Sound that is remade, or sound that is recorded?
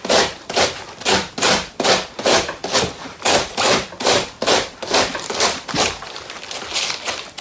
remade